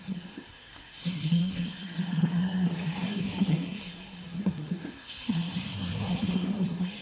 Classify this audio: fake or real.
fake